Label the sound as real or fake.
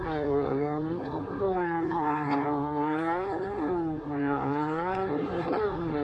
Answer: fake